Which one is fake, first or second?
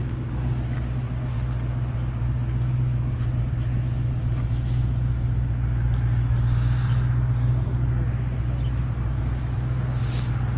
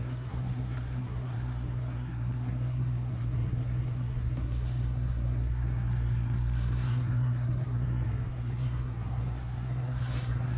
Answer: second